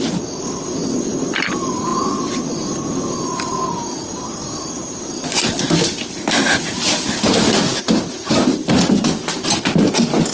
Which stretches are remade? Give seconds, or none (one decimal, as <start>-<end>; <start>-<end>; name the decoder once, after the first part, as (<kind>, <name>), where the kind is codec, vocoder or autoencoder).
none